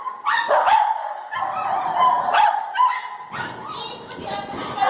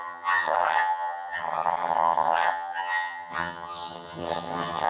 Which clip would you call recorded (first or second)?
first